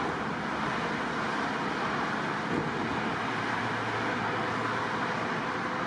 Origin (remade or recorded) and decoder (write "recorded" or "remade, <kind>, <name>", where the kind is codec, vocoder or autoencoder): recorded